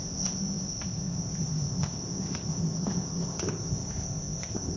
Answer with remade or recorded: remade